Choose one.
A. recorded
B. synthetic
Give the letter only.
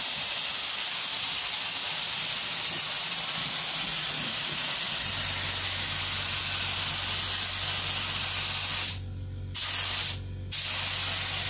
A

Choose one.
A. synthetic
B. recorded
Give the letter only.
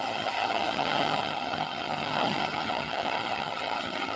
A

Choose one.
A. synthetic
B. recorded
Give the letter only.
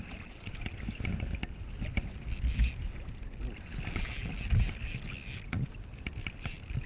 B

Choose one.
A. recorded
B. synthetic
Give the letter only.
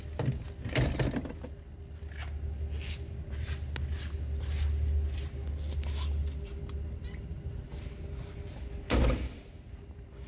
A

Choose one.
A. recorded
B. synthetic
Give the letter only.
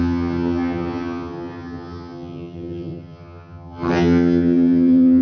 B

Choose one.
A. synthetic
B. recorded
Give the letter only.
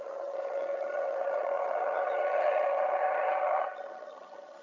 A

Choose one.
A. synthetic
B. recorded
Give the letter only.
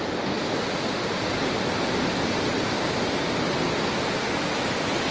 B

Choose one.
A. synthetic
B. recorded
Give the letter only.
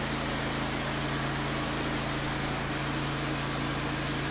B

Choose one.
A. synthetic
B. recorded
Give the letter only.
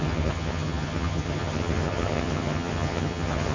A